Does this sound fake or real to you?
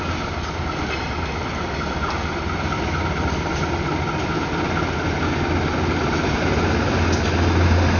real